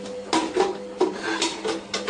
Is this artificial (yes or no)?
no